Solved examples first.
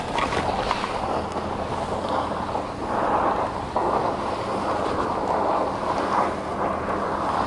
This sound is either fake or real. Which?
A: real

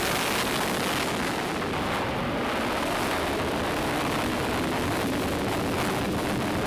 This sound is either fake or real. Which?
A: real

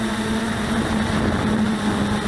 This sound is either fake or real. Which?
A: real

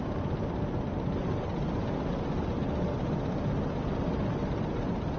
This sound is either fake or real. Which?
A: real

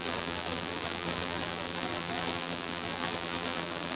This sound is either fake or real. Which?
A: fake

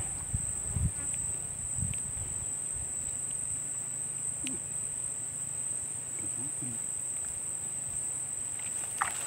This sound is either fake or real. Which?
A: real